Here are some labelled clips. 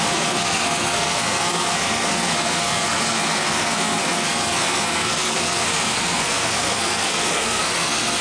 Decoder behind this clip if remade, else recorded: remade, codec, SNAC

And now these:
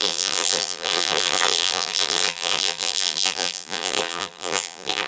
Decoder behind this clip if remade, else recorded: remade, vocoder, BigVGAN v2